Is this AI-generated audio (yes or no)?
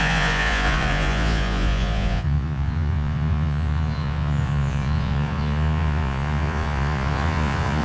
yes